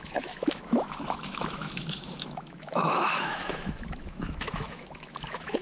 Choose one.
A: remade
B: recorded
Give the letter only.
A